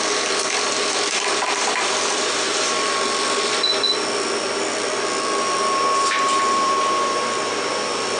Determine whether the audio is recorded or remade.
remade